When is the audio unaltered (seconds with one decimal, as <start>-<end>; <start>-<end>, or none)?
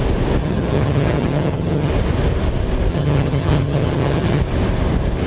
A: 0.0-0.4; 1.9-2.9; 4.4-5.3